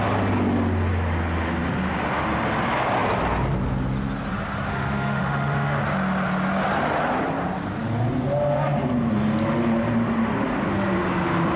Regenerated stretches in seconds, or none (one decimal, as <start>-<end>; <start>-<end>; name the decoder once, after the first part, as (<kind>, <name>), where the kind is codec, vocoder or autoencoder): 4.7-5.8 (autoencoder, DAC-VAE)